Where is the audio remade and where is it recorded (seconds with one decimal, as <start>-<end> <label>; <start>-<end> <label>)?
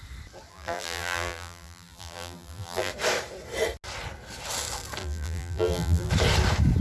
0.0-0.5 recorded; 0.5-2.9 remade; 2.9-5.0 recorded; 5.0-6.1 remade; 6.1-6.8 recorded